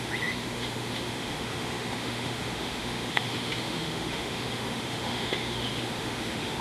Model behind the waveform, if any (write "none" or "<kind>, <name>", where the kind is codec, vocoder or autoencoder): autoencoder, DAC-VAE